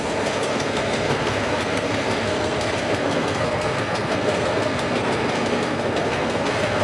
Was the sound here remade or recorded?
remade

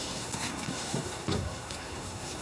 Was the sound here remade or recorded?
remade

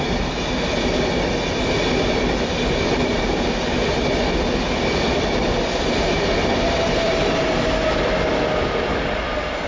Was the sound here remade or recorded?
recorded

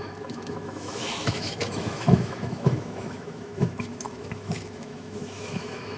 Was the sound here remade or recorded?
remade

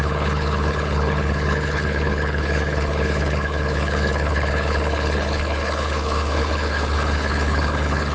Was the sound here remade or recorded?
remade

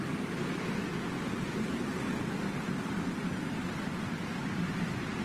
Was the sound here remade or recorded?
recorded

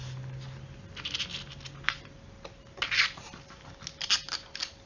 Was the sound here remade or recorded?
recorded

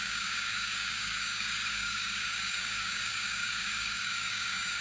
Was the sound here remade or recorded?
remade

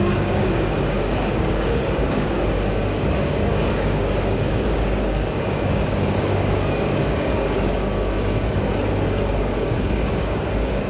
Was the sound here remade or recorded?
remade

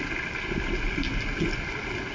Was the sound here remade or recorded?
recorded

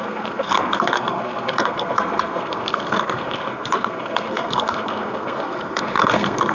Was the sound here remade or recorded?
remade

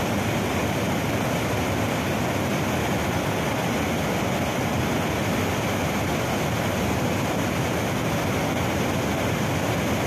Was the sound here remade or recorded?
recorded